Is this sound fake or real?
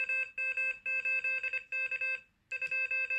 real